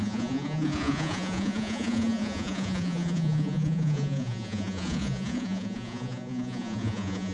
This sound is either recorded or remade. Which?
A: remade